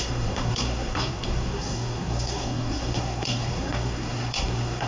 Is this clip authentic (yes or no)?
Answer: no